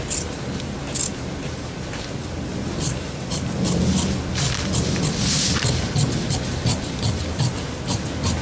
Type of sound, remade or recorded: recorded